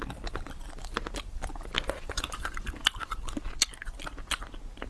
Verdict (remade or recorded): recorded